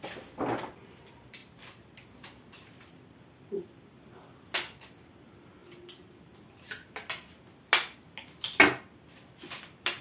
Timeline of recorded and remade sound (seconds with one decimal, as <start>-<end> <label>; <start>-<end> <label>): 0.0-10.0 recorded